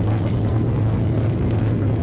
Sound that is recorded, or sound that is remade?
remade